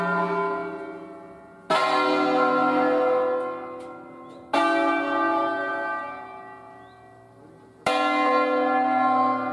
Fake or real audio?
real